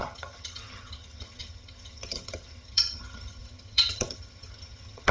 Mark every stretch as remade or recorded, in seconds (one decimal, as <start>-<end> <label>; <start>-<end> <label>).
0.0-5.1 remade